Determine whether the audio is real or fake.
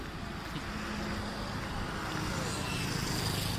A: real